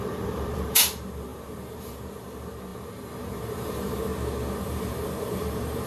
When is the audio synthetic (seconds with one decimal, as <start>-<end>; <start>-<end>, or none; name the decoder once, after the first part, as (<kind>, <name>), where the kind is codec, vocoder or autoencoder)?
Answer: 0.0-4.1 (vocoder, BigVGAN v2); 4.6-5.9